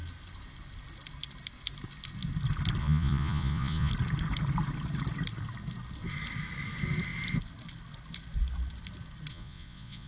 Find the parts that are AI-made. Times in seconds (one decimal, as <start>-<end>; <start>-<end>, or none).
2.8-3.9; 9.3-10.1